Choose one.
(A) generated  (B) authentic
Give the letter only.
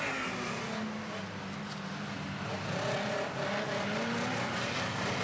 B